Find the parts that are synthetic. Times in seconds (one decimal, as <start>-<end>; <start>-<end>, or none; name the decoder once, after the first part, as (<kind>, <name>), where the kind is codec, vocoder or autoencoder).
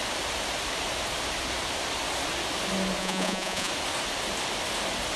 3.0-3.7 (vocoder, Vocos)